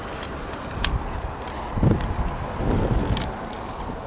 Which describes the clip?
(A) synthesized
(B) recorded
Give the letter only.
B